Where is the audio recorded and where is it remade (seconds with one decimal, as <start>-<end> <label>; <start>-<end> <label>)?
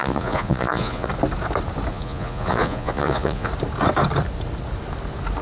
0.0-1.1 remade; 1.1-1.9 recorded; 1.9-3.5 remade; 3.5-5.4 recorded